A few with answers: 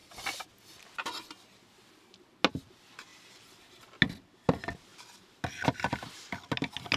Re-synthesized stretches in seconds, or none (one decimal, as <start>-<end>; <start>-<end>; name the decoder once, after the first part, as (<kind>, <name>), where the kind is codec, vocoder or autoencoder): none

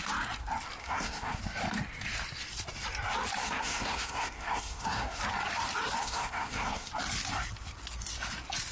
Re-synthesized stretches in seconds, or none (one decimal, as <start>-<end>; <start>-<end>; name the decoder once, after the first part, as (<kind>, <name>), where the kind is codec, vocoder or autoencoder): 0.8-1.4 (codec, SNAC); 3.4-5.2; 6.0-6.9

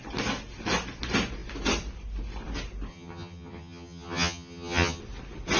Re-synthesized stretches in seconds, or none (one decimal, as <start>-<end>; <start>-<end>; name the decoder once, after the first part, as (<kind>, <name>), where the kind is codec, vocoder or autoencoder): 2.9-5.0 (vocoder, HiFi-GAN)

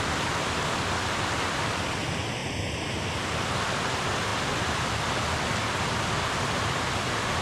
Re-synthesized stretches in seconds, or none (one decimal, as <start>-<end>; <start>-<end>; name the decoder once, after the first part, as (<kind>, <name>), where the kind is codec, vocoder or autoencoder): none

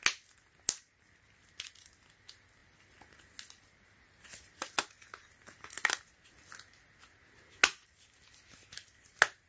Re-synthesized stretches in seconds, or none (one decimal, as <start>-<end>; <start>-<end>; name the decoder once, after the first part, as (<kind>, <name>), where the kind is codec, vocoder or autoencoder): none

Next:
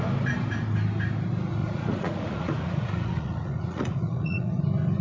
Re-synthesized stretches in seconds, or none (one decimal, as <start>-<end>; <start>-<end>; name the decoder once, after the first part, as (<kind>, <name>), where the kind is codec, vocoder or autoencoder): 1.6-4.6 (vocoder, Vocos)

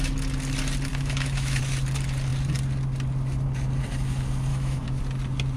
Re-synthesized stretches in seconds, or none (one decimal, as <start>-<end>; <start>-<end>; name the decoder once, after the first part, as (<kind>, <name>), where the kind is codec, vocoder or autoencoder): 0.9-1.6 (autoencoder, DAC-VAE); 4.5-5.0